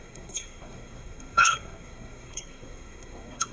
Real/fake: fake